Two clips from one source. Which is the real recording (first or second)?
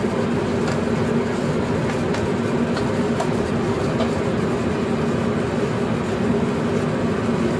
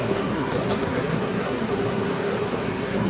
first